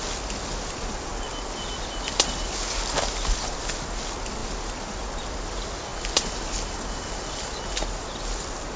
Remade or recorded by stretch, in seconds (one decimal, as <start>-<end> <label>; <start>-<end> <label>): 0.0-8.8 recorded

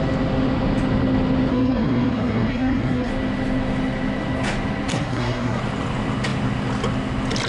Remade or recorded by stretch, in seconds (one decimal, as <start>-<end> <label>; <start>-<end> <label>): 0.0-1.5 recorded; 1.5-3.1 remade; 3.1-4.9 recorded; 4.9-5.6 remade; 5.6-7.5 recorded